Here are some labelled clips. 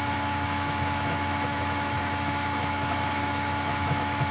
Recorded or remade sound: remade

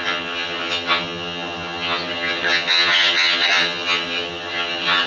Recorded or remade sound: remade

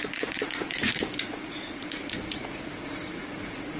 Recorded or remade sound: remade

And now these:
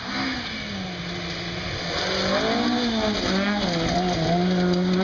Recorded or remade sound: recorded